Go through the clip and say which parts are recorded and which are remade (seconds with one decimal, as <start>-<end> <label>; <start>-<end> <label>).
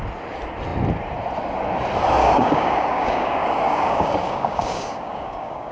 0.0-2.2 recorded; 2.2-5.7 remade